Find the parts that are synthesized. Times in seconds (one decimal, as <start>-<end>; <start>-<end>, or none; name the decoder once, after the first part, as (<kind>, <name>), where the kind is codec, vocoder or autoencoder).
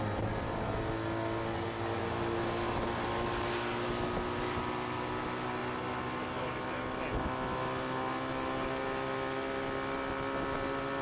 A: none